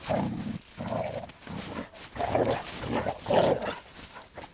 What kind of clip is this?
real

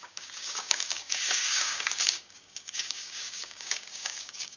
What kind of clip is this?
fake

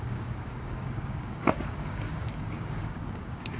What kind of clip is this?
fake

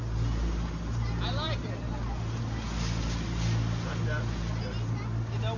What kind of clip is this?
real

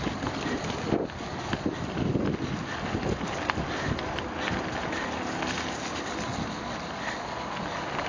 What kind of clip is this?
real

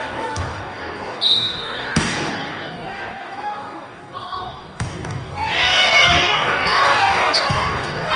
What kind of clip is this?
fake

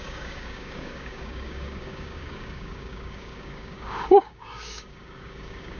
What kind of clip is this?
fake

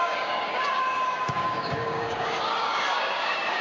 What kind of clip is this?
fake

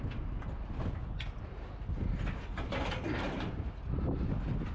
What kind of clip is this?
real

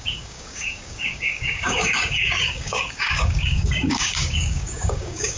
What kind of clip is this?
fake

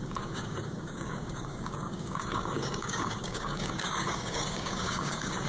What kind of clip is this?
fake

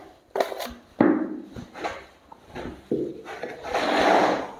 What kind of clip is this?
real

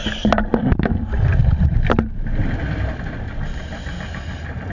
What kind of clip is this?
real